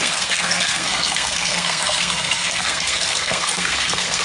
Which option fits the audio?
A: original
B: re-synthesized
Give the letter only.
B